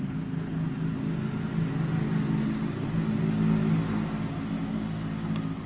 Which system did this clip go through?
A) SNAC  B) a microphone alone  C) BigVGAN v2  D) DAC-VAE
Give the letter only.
B